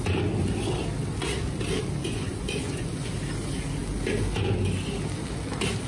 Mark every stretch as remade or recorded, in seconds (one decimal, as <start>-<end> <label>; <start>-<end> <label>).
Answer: 0.0-2.0 recorded; 2.0-3.1 remade; 3.1-5.9 recorded